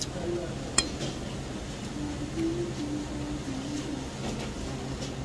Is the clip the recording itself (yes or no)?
yes